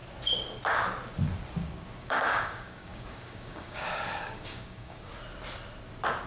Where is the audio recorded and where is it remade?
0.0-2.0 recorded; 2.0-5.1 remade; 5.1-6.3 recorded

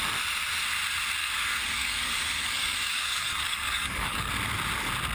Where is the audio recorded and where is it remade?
0.0-1.2 recorded; 1.2-4.3 remade; 4.3-5.1 recorded

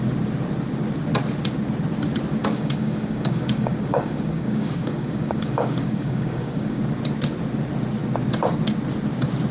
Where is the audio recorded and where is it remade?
0.0-2.4 recorded; 2.4-6.8 remade; 6.8-9.5 recorded